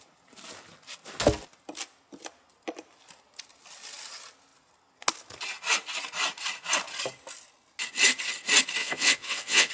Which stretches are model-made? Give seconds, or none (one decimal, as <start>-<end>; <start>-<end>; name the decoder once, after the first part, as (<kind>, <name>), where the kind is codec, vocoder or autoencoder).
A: 8.8-9.7 (vocoder, WaveNeXt)

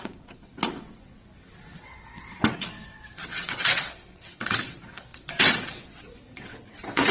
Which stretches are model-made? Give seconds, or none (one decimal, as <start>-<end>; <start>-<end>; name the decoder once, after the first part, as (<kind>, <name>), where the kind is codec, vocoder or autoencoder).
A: 0.0-7.1 (vocoder, WaveNeXt)

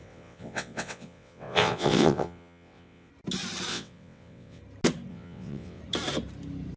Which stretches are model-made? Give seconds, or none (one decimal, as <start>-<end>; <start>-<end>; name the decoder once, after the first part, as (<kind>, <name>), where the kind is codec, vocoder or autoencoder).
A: 0.0-3.1 (vocoder, WaveNeXt); 3.7-4.6; 5.1-5.8

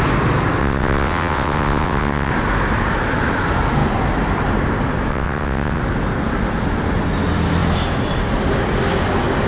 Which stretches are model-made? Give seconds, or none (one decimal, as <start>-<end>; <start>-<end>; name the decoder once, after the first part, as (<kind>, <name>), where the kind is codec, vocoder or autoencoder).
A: 0.6-2.3 (vocoder, WaveNeXt); 5.1-5.8

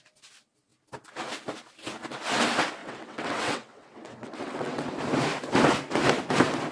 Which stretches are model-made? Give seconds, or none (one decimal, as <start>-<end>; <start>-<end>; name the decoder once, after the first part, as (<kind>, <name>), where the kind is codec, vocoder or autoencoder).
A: 2.8-4.9 (vocoder, WaveNeXt)

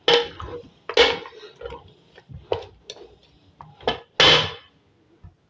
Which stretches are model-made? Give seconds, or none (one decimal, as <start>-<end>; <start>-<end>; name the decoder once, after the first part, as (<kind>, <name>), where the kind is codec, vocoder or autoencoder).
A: none

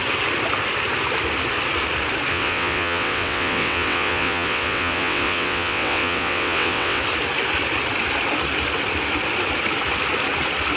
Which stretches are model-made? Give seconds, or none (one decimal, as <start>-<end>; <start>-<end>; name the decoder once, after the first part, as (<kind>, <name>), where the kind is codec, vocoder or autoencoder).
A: 2.3-7.0 (vocoder, WaveNeXt)

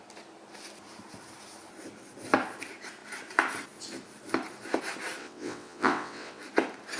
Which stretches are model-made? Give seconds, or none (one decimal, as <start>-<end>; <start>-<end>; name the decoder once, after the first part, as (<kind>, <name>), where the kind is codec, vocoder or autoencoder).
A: 5.2-6.4 (vocoder, WaveNeXt)